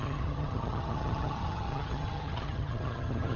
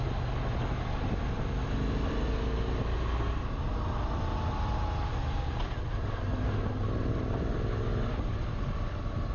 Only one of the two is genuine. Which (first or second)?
second